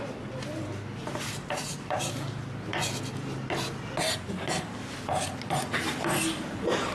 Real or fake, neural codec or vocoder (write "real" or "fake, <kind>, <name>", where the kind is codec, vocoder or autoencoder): real